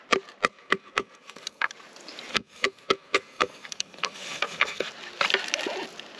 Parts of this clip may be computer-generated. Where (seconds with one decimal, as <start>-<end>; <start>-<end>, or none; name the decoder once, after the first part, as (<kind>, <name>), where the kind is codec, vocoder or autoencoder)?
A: 0.5-1.7 (codec, SNAC); 2.3-4.9